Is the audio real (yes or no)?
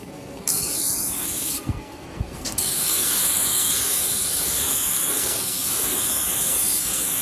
no